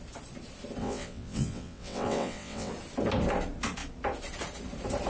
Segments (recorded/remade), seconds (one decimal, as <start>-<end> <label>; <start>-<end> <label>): 0.0-0.8 recorded; 0.8-2.7 remade; 2.7-5.1 recorded